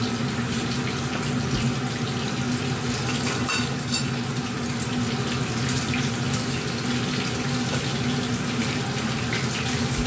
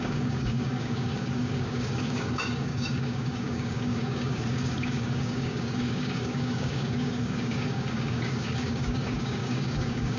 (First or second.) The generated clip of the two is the second